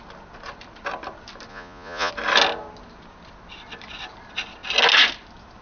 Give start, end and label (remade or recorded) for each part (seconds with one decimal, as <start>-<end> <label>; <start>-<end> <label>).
0.0-1.5 recorded; 1.5-2.1 remade; 2.1-5.6 recorded